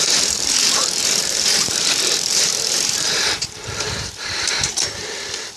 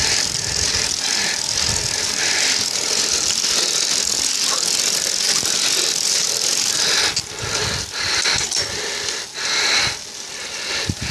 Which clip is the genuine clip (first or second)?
second